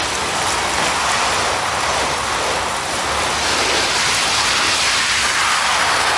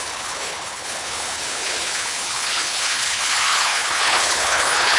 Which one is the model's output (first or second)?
second